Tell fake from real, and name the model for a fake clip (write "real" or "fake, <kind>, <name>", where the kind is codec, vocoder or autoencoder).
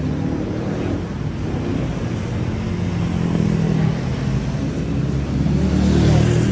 real